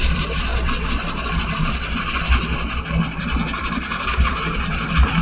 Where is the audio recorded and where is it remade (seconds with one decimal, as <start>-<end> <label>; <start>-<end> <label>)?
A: 0.0-0.5 remade; 0.5-1.3 recorded; 1.3-2.0 remade; 2.0-3.6 recorded; 3.6-5.2 remade